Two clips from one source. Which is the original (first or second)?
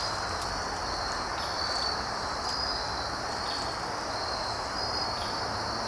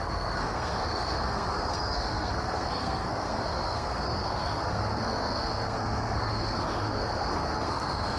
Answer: first